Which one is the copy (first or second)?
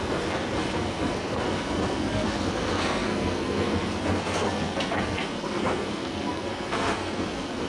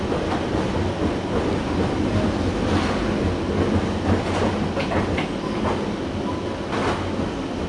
first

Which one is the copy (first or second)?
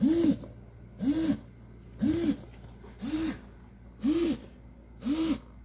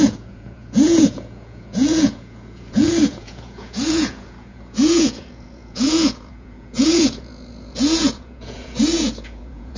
second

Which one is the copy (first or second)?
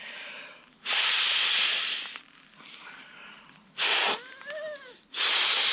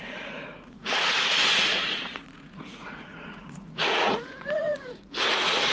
second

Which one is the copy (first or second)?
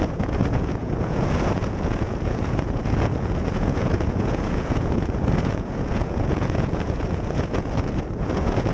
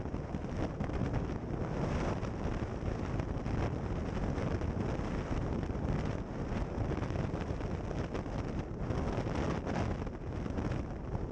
first